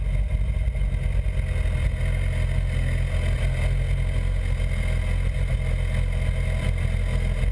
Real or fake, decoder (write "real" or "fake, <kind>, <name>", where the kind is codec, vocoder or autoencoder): real